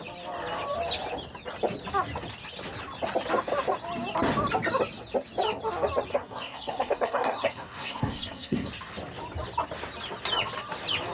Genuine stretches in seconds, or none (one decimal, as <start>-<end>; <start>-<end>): 0.0-6.1; 8.7-11.1